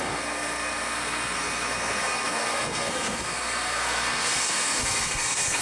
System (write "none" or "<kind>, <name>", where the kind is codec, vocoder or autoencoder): codec, SNAC